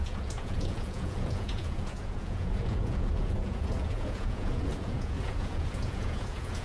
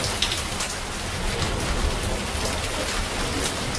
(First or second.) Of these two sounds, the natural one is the second